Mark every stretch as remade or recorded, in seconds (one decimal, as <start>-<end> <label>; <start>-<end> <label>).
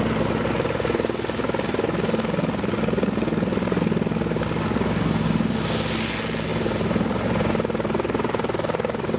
0.0-6.5 recorded; 6.5-9.2 remade